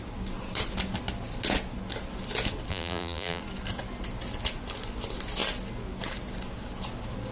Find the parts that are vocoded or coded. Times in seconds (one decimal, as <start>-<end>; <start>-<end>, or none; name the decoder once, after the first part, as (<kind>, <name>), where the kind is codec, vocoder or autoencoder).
2.7-3.4 (vocoder, BigVGAN v2)